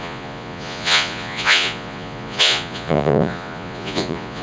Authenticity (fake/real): fake